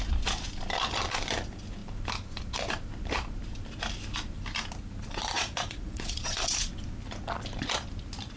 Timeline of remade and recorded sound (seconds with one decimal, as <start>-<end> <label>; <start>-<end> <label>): 0.0-5.0 recorded; 5.0-6.7 remade; 6.7-8.4 recorded